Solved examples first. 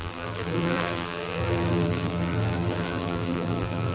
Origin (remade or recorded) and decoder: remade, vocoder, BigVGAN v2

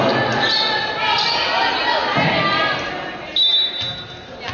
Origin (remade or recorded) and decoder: recorded